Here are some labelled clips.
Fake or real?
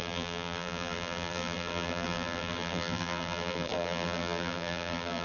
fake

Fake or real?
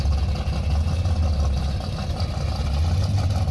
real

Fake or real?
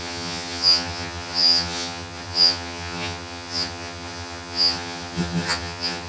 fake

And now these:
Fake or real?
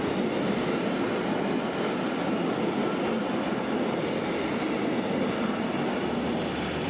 real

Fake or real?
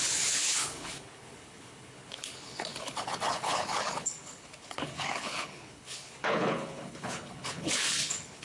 fake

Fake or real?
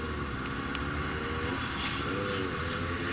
real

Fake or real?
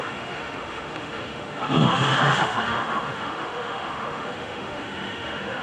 fake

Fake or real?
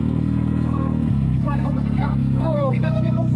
fake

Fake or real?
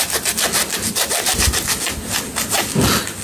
real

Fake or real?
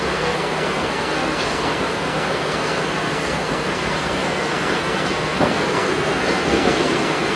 fake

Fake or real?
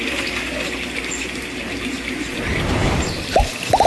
fake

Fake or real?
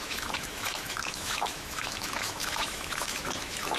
fake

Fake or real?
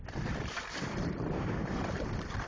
fake